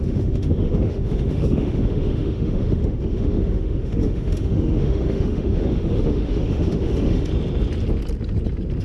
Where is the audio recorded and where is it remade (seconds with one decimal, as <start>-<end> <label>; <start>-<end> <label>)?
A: 0.0-7.3 remade; 7.3-8.8 recorded